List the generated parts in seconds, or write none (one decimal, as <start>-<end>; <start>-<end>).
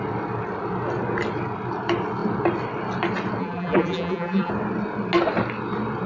3.4-4.5